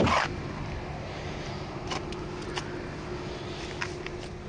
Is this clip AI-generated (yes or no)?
no